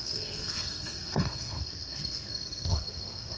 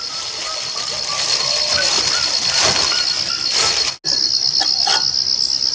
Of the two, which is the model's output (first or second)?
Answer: first